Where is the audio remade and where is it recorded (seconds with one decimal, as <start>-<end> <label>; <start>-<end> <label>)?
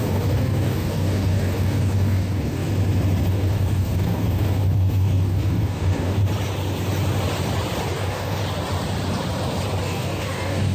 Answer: 0.0-2.7 remade; 2.7-3.3 recorded; 3.3-6.2 remade; 6.2-7.9 recorded; 7.9-8.4 remade; 8.4-9.8 recorded; 9.8-10.7 remade